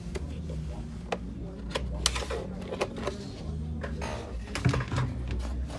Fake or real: real